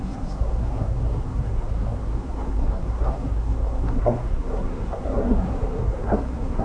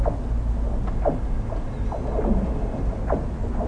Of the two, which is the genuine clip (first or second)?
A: second